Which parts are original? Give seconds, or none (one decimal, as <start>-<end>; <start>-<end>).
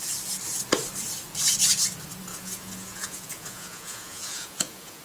0.0-2.3